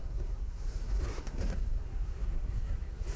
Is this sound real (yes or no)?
no